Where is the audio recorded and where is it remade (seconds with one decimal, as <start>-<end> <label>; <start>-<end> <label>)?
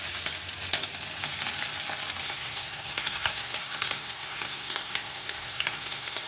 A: 0.0-2.2 recorded; 2.2-6.3 remade